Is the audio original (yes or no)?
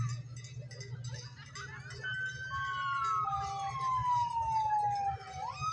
yes